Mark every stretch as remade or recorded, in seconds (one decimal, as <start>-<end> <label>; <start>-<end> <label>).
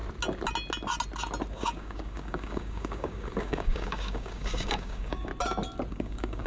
0.0-1.5 recorded; 1.5-5.3 remade; 5.3-5.9 recorded; 5.9-6.5 remade